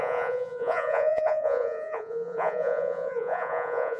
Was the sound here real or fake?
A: fake